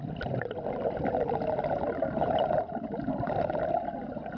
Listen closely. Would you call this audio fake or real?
real